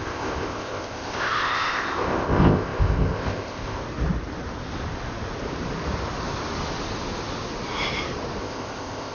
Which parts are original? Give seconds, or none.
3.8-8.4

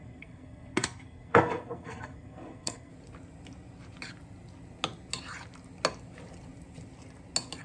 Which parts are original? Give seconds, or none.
2.9-7.6